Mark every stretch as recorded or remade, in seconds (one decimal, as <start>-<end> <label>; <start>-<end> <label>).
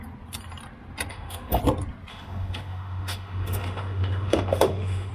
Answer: 0.0-1.1 recorded; 1.1-1.6 remade; 1.6-2.1 recorded; 2.1-5.1 remade